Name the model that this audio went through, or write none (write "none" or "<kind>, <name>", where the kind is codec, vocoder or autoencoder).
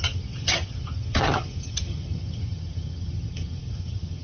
vocoder, HiFi-GAN